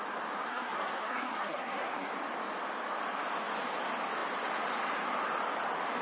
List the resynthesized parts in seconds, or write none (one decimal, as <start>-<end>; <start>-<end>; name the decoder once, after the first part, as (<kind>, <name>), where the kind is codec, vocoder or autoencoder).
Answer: 0.5-2.1 (codec, SNAC)